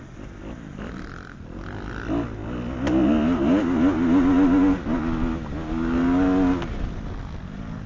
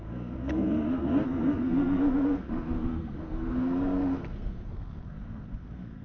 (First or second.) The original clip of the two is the first